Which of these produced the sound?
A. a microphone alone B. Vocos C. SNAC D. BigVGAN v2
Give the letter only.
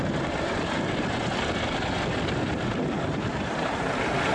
A